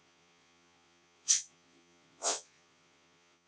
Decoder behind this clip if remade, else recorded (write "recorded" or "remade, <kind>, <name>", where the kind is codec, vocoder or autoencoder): remade, vocoder, Vocos